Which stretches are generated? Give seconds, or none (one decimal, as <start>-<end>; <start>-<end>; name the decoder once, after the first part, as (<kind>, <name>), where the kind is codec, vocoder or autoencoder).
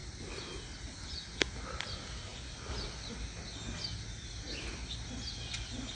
none